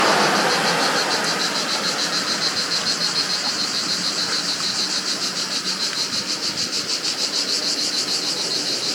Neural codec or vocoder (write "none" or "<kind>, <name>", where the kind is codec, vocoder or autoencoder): none